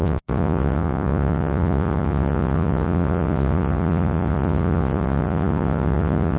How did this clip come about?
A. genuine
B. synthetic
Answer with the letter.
B